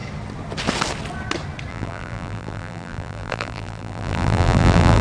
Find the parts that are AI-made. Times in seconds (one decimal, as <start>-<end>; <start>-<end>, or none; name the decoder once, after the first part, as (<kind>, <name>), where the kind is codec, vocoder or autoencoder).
1.7-5.0 (vocoder, BigVGAN v2)